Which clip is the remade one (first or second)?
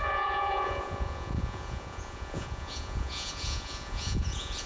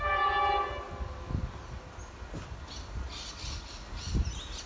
first